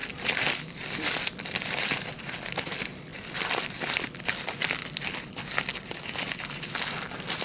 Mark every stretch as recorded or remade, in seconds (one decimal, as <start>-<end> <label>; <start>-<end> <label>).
0.0-2.3 remade; 2.3-3.1 recorded; 3.1-6.6 remade; 6.6-7.4 recorded